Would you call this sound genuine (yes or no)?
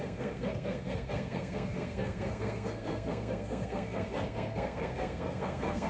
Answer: no